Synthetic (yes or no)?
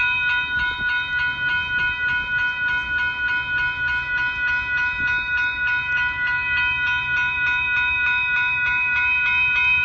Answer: no